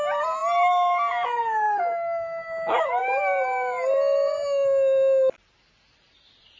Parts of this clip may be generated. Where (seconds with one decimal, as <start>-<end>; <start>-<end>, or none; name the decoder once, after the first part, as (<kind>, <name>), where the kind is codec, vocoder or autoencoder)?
none